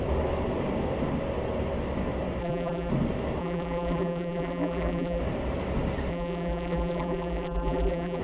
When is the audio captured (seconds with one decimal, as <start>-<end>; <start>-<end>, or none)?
0.0-2.4; 2.9-3.4; 5.2-6.1